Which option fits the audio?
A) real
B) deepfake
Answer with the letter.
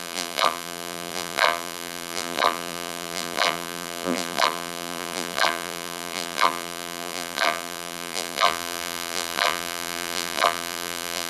B